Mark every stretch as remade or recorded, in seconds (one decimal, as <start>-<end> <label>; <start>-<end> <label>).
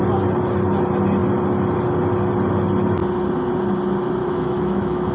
0.0-4.2 recorded; 4.2-5.1 remade